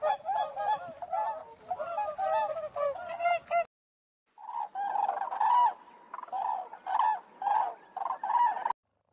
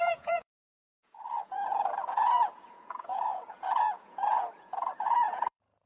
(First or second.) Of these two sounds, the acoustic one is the first